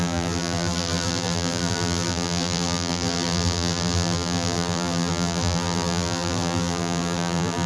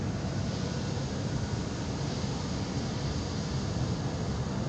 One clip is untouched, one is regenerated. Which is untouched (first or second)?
second